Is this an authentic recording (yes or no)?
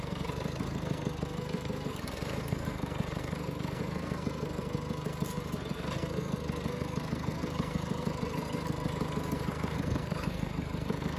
no